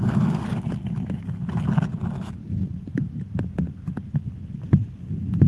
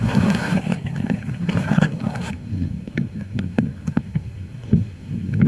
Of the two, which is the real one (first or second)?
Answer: first